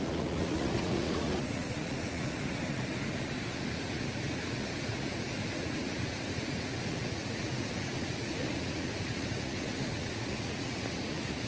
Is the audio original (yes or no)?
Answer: no